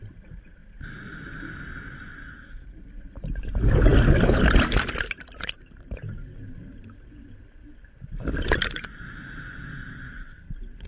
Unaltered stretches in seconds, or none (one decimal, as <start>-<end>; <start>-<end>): 0.6-2.3